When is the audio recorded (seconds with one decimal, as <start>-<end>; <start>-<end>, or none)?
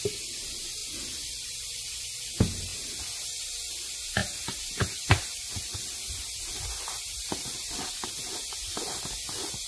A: 0.0-0.8; 2.3-4.2; 8.2-9.7